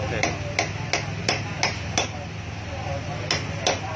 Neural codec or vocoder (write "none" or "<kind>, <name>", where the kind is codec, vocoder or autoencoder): none